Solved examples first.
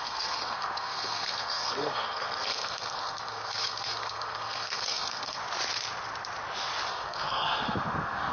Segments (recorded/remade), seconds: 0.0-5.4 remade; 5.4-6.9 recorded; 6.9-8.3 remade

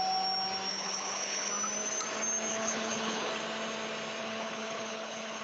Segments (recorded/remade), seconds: 0.0-0.7 recorded; 0.7-1.5 remade; 1.5-2.5 recorded; 2.5-3.3 remade; 3.3-4.2 recorded; 4.2-5.4 remade

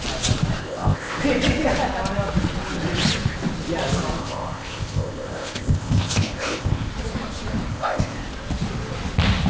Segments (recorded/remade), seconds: 0.0-0.6 recorded; 0.6-1.2 remade; 1.2-4.2 recorded; 4.2-6.9 remade; 6.9-7.7 recorded; 7.7-8.3 remade; 8.3-9.5 recorded